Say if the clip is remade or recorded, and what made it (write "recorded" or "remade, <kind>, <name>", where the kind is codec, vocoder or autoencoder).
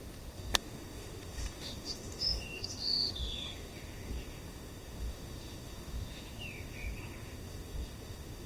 remade, autoencoder, DAC-VAE